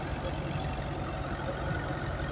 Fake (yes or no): no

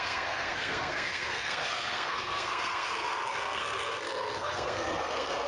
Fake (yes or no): yes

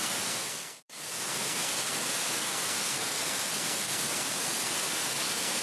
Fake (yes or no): yes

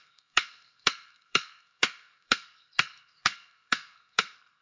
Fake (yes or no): yes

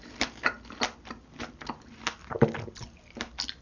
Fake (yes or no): no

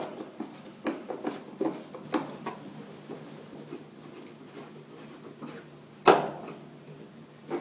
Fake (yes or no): no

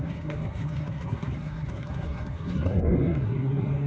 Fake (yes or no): yes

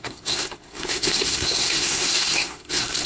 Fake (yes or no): yes